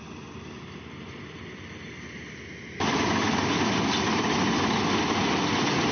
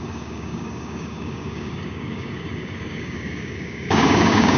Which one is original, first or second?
first